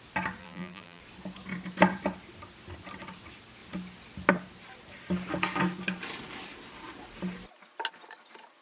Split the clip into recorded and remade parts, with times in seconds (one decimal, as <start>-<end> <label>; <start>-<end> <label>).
0.0-0.4 recorded; 0.4-1.0 remade; 1.0-8.6 recorded